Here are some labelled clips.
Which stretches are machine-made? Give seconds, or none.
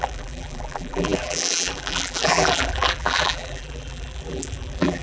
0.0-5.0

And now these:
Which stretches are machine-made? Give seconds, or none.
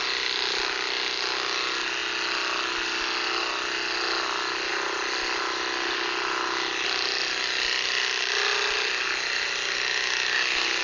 none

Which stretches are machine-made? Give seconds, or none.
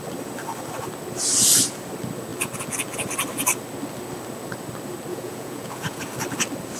5.1-6.0